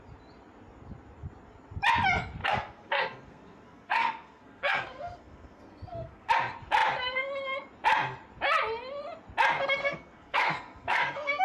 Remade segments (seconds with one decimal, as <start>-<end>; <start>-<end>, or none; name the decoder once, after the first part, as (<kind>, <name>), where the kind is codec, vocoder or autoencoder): 2.4-6.3 (codec, SNAC); 9.8-11.4